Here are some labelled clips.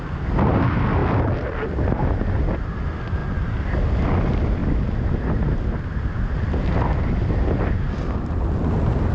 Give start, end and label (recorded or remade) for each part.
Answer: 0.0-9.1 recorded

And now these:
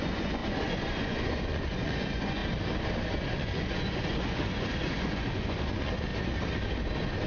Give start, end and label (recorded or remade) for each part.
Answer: 0.0-2.4 remade; 2.4-3.1 recorded; 3.1-6.1 remade; 6.1-7.3 recorded

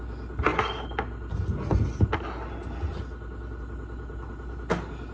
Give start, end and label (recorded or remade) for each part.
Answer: 0.0-5.1 recorded

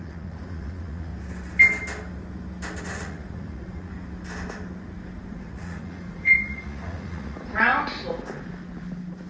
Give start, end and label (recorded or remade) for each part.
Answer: 0.0-1.1 remade; 1.1-2.8 recorded; 2.8-3.9 remade; 3.9-5.3 recorded; 5.3-7.7 remade; 7.7-9.3 recorded